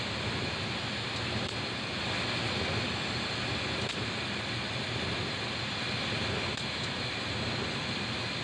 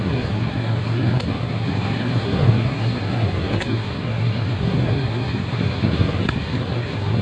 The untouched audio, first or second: first